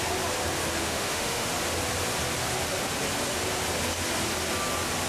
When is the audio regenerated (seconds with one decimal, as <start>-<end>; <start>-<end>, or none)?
0.8-1.5